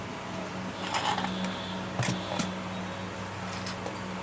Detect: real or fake real